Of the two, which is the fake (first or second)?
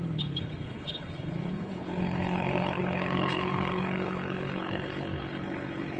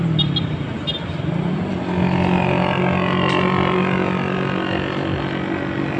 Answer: first